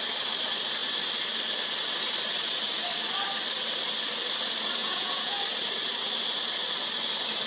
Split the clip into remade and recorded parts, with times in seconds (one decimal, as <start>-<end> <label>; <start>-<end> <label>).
0.0-4.8 recorded; 4.8-5.4 remade; 5.4-7.5 recorded